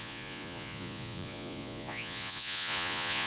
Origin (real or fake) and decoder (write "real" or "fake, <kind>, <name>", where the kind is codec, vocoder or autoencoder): fake, vocoder, Vocos